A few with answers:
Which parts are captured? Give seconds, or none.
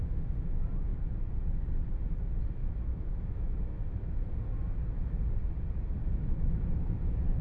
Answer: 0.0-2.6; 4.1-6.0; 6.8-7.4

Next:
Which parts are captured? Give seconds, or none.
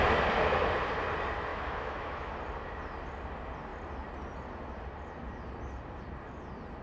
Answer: 0.0-1.5; 2.3-6.8